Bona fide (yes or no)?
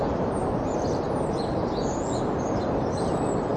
yes